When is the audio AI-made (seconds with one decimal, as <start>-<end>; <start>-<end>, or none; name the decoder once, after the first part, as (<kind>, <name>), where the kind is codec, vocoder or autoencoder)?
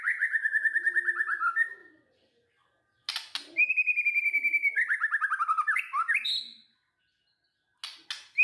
none